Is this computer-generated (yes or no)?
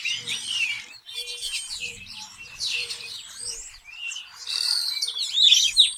yes